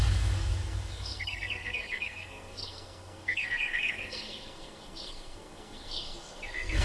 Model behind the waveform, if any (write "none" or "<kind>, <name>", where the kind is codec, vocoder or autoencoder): codec, SNAC